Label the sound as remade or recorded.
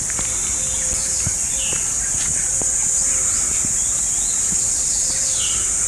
recorded